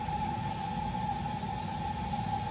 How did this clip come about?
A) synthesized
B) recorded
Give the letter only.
B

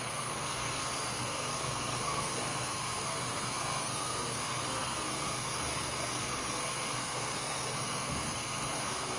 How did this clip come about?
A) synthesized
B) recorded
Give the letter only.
A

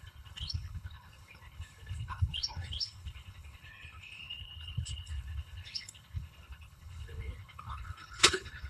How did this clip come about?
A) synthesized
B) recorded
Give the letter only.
A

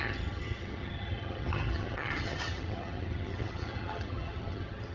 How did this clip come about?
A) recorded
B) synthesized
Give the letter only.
B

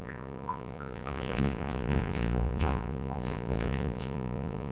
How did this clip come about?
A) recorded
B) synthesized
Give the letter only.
B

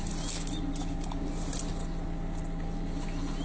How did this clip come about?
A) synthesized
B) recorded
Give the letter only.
B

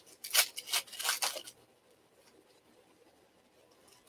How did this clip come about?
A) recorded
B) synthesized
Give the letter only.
A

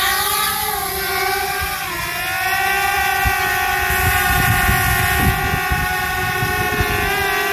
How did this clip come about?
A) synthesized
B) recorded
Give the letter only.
B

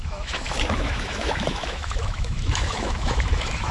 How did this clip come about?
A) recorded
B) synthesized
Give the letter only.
B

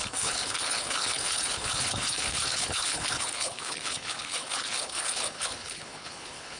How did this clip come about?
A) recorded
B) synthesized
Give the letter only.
B